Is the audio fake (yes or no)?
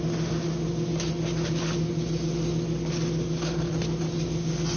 no